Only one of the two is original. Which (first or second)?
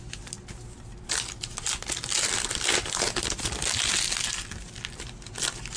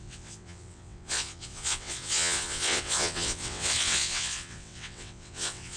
first